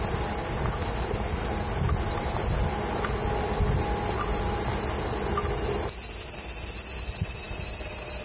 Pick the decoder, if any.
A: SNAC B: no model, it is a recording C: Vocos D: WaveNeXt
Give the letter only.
B